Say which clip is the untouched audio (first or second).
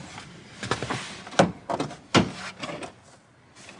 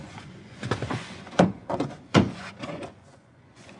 first